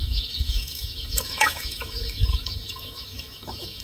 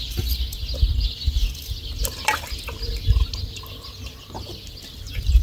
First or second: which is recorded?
second